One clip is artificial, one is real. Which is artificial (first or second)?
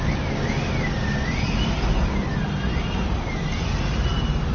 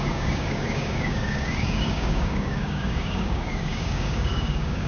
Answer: second